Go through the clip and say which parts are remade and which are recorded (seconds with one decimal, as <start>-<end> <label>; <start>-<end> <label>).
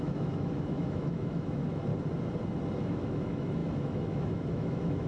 0.0-1.9 remade; 1.9-2.8 recorded; 2.8-5.1 remade